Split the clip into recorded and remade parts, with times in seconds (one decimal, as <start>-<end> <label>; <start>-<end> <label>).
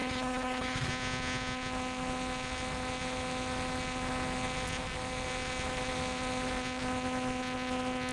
0.0-0.9 remade; 0.9-8.1 recorded